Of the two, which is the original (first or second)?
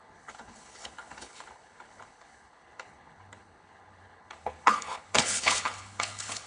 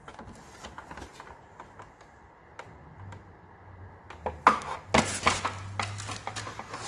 second